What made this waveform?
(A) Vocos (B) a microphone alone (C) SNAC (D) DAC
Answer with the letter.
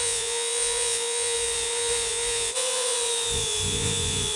A